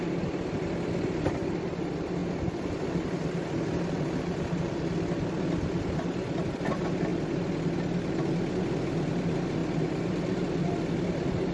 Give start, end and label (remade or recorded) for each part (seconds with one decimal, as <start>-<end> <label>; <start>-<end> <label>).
0.0-9.6 recorded; 9.6-10.4 remade; 10.4-11.5 recorded